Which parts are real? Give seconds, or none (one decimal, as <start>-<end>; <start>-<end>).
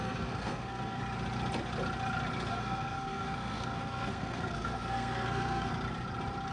1.0-2.5; 5.7-6.5